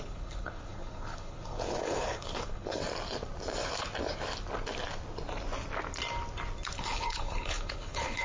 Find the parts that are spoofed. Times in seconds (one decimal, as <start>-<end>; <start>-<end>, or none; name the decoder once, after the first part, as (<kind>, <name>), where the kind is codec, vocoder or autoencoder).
0.0-2.8 (codec, HILCodec); 6.8-8.2